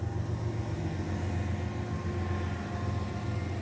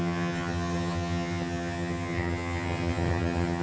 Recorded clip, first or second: first